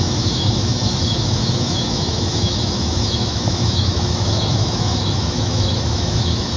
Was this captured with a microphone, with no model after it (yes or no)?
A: no